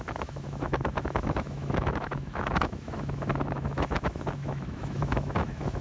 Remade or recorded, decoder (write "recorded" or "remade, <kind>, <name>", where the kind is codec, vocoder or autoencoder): remade, autoencoder, DAC-VAE